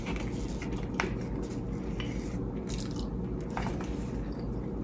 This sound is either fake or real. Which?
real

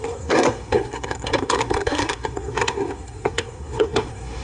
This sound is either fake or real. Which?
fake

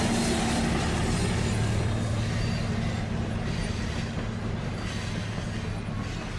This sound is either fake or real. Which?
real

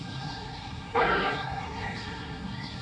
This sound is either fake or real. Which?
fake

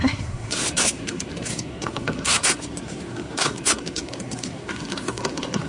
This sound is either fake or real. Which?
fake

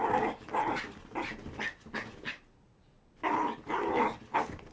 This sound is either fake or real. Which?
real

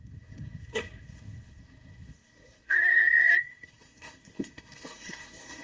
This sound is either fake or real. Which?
fake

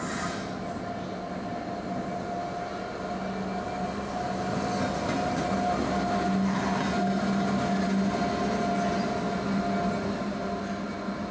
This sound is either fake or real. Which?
real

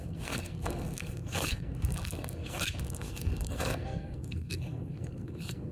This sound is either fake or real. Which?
fake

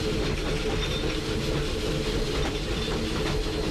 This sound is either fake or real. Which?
real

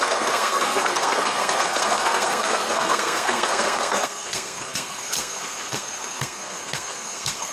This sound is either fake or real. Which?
fake